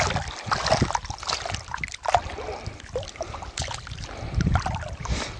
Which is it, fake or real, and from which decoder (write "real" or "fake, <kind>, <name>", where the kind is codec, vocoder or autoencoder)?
real